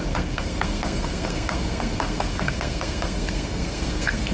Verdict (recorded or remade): remade